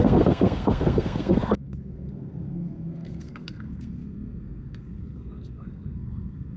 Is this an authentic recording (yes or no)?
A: no